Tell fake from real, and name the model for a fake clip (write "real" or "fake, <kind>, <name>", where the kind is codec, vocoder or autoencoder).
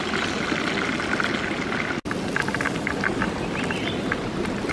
real